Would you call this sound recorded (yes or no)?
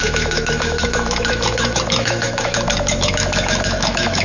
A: no